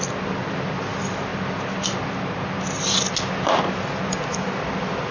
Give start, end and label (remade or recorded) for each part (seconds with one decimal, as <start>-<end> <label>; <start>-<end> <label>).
0.0-5.1 recorded